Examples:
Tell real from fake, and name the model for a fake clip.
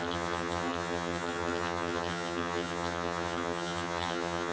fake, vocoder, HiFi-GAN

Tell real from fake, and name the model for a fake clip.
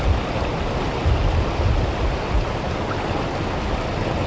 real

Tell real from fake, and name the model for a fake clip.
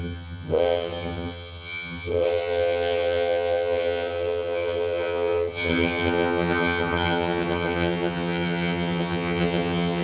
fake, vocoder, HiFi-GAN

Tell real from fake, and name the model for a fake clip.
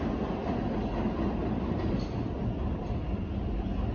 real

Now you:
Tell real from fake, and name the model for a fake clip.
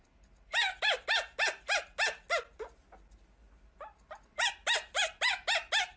real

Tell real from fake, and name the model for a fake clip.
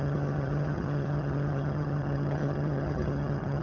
fake, vocoder, HiFi-GAN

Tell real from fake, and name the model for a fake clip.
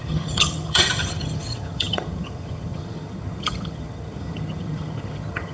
fake, vocoder, HiFi-GAN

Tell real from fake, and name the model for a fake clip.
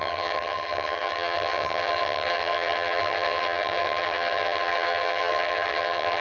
fake, vocoder, HiFi-GAN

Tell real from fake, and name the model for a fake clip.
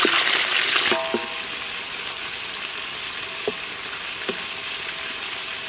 real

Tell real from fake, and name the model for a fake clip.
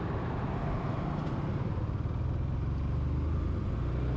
real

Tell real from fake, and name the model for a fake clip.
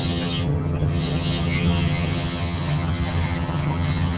fake, vocoder, HiFi-GAN